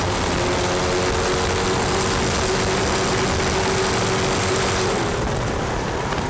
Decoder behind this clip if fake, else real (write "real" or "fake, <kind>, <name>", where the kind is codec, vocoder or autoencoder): real